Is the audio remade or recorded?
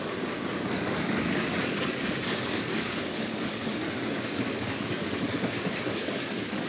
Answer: remade